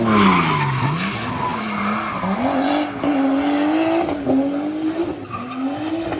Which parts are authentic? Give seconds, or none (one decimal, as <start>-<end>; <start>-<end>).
0.0-6.2